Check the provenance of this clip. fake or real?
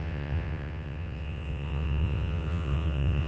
fake